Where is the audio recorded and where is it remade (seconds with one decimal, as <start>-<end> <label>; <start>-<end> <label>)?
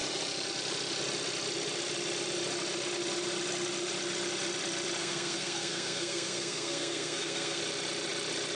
0.0-5.0 recorded; 5.0-7.6 remade; 7.6-8.6 recorded